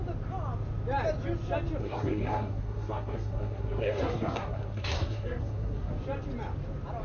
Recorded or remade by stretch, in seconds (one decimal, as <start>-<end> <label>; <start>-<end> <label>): 0.0-1.8 recorded; 1.8-5.9 remade; 5.9-7.0 recorded